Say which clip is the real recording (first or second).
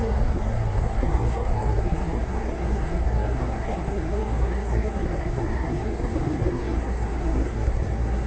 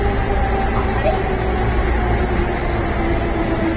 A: second